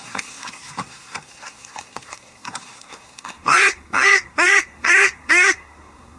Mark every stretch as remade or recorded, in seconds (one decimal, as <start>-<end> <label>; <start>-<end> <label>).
0.0-6.2 remade